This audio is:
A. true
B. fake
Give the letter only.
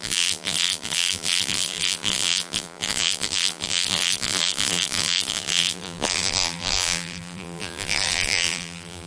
B